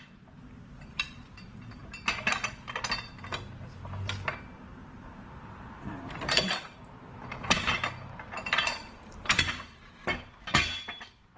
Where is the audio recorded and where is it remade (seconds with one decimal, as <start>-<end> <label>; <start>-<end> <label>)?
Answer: 0.0-1.8 remade; 1.8-5.9 recorded; 5.9-11.4 remade